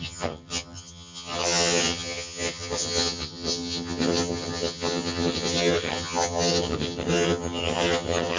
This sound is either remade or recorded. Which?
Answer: remade